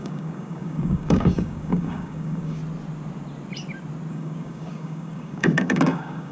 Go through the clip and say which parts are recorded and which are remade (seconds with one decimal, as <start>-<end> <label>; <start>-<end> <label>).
0.0-2.6 remade; 2.6-4.1 recorded; 4.1-6.3 remade